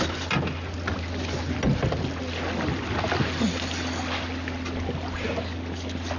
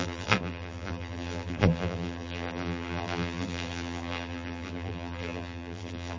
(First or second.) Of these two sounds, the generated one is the second